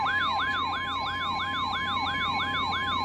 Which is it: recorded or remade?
recorded